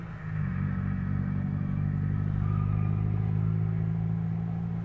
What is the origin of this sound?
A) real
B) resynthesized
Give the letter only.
A